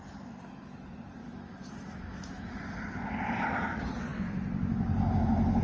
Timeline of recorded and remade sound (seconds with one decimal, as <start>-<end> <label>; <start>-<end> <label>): 0.0-1.2 recorded; 1.2-2.6 remade; 2.6-5.6 recorded